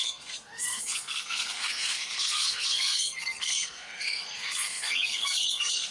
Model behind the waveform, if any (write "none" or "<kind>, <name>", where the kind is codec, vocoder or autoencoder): codec, SNAC